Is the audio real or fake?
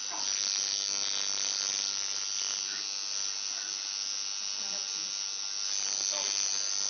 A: real